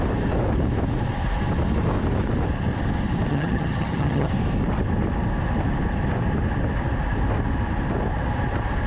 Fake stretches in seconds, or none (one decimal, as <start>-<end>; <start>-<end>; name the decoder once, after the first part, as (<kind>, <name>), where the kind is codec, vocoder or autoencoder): 3.3-4.3 (vocoder, HiFi-GAN)